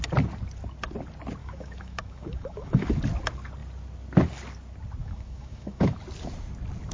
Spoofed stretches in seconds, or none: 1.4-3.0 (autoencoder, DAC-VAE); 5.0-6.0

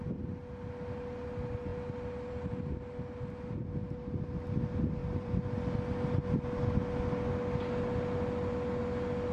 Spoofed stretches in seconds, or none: 5.0-5.5 (vocoder, BigVGAN v2)

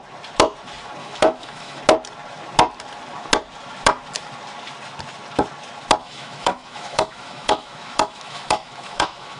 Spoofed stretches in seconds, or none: 1.0-1.8 (autoencoder, DAC-VAE); 6.0-9.4

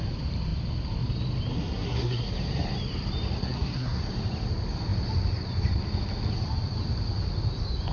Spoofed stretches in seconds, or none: 1.5-2.3 (codec, SNAC); 3.4-4.0